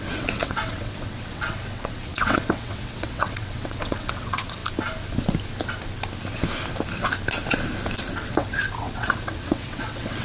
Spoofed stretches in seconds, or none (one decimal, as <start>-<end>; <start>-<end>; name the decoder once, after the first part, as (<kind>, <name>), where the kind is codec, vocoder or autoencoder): 0.0-4.6 (vocoder, WaveNeXt); 8.3-10.2